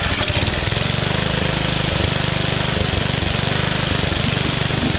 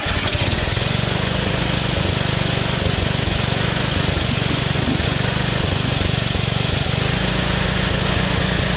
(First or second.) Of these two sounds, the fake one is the second